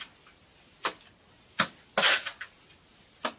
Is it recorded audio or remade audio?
recorded